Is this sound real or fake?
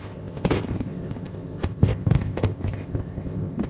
fake